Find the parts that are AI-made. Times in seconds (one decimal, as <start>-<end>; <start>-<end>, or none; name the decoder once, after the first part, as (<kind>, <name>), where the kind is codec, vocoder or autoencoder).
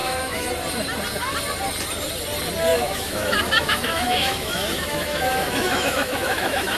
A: 0.0-0.5 (autoencoder, DAC-VAE); 2.7-6.8